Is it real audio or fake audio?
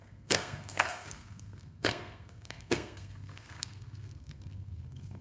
fake